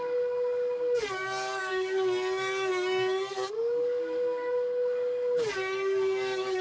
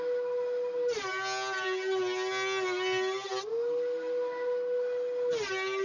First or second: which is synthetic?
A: first